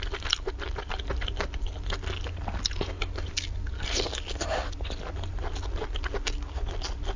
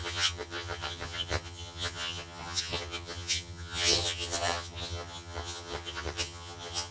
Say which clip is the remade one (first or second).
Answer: second